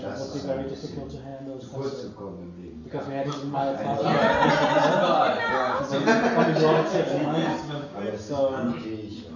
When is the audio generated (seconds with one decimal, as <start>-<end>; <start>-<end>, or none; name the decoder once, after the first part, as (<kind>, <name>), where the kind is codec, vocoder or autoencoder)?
6.9-8.0 (codec, DAC)